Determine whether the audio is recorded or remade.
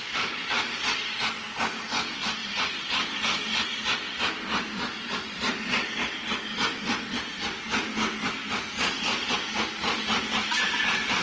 recorded